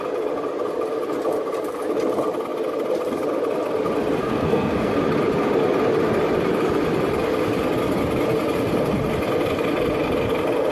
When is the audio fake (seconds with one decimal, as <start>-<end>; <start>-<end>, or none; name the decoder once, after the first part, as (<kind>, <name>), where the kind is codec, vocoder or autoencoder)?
4.2-4.9 (codec, SNAC)